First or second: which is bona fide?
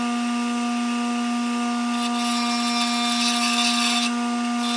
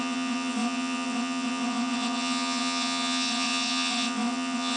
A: first